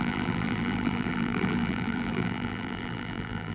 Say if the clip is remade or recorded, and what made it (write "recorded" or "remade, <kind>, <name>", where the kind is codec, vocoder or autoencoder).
remade, vocoder, BigVGAN v2